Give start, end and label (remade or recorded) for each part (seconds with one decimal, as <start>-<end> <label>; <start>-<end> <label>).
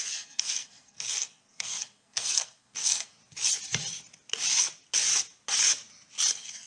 0.0-3.2 remade; 3.2-6.3 recorded; 6.3-6.7 remade